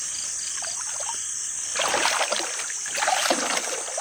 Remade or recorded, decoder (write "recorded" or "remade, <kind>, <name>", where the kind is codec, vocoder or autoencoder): recorded